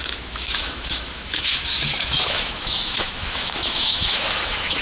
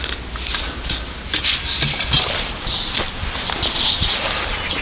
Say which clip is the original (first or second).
second